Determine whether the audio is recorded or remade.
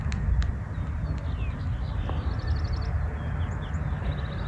recorded